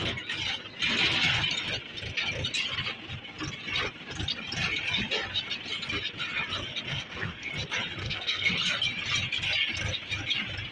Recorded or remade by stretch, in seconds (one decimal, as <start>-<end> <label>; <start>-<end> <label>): 0.0-6.9 recorded; 6.9-7.5 remade; 7.5-8.0 recorded; 8.0-8.5 remade; 8.5-10.7 recorded